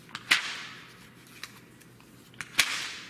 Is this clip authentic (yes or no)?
yes